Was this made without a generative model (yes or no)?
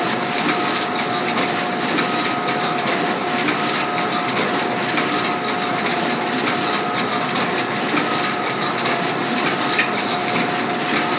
yes